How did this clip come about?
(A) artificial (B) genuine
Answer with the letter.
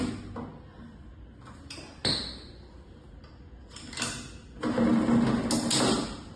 B